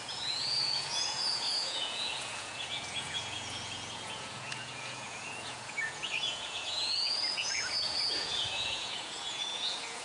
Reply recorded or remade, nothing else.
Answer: remade